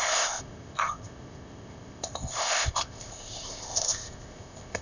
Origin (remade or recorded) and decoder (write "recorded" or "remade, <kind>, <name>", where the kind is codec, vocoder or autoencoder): remade, codec, ZipCodec